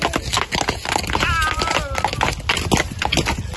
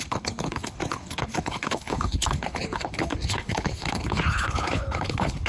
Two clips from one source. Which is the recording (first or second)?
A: first